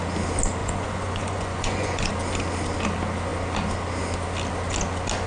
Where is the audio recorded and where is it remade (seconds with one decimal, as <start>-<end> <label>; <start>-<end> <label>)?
0.0-0.6 recorded; 0.6-2.1 remade; 2.1-5.3 recorded